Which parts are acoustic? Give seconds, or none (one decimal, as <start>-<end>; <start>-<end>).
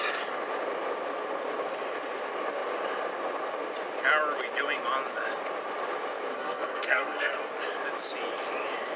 0.0-6.3; 7.5-9.0